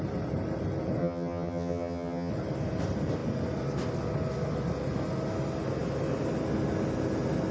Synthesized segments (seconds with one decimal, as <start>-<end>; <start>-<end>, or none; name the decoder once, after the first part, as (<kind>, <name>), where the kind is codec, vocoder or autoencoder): 1.0-2.3 (vocoder, HiFi-GAN)

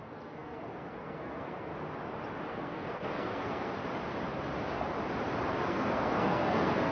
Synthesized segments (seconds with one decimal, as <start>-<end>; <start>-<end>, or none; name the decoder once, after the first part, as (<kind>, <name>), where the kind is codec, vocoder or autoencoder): 0.0-1.7 (codec, SNAC); 2.5-3.8; 5.5-6.9